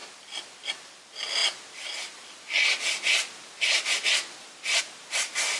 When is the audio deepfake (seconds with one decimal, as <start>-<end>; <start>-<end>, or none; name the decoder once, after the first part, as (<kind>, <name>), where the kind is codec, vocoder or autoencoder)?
none